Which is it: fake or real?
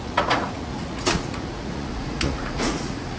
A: fake